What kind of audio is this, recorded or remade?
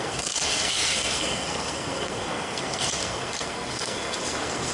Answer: remade